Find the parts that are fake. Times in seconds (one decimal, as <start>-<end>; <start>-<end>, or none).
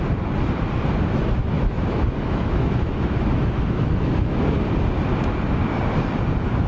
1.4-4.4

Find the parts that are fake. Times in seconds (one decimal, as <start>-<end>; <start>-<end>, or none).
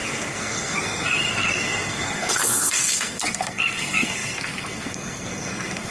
0.0-5.9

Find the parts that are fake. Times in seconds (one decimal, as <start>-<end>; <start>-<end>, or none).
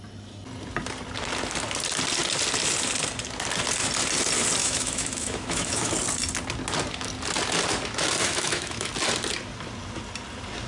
4.6-5.9; 8.2-8.9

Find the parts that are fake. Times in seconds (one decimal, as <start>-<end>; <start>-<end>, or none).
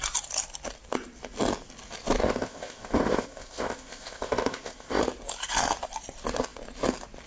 2.2-5.0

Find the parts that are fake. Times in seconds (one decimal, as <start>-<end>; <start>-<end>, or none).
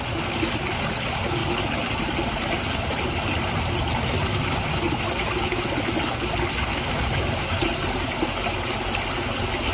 6.7-7.6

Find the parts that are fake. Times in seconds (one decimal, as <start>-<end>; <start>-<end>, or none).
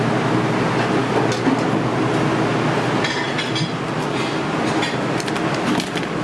none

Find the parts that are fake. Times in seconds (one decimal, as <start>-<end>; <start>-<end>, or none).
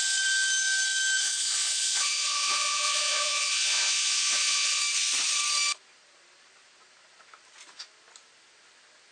1.2-4.8